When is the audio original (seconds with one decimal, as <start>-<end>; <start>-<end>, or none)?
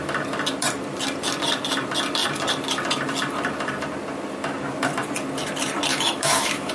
0.0-5.9